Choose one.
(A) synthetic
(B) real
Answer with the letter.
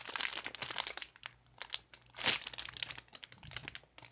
B